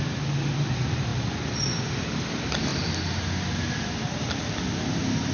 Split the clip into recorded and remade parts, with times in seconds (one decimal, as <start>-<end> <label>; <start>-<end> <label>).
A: 0.0-5.3 recorded